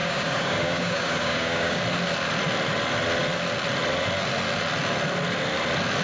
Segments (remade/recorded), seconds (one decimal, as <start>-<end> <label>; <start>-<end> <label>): 0.0-1.8 remade; 1.8-6.0 recorded

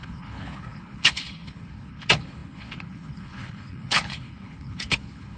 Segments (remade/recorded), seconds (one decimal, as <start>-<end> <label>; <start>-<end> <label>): 0.0-5.4 remade